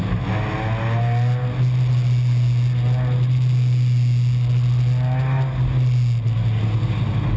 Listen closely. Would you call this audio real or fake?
real